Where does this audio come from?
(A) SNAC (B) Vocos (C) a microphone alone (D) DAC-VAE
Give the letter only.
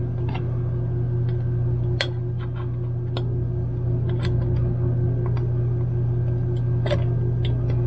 C